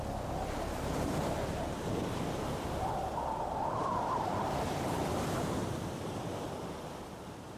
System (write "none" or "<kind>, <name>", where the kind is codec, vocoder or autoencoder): vocoder, BigVGAN v2